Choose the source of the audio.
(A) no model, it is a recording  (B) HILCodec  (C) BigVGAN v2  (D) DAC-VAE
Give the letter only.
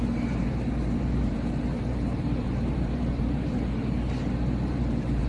C